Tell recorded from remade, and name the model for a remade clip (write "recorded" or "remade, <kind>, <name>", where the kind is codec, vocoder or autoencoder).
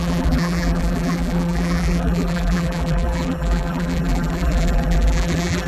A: remade, vocoder, BigVGAN v2